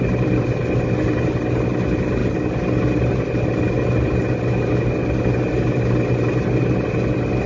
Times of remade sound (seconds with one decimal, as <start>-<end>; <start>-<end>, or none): none